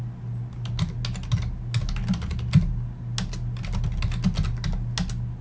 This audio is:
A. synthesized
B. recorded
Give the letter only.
B